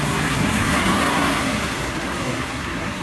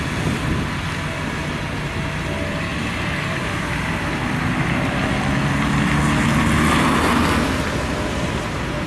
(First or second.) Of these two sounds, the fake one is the first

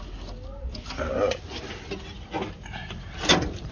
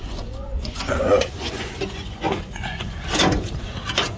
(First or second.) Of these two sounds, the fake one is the second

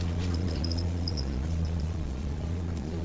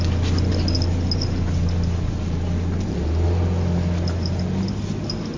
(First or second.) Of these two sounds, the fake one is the first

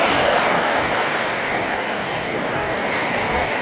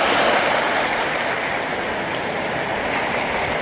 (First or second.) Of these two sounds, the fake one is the first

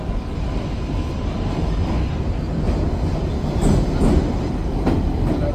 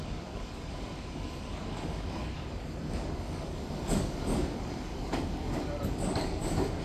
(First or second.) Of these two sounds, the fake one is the second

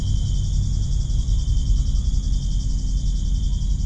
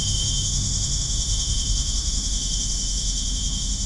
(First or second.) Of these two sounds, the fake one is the second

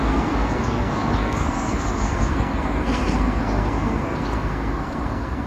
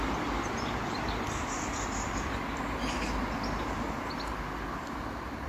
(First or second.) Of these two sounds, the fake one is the first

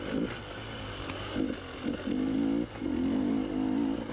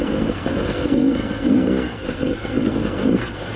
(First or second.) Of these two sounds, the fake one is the second